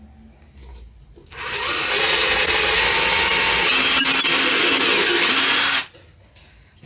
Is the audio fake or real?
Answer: real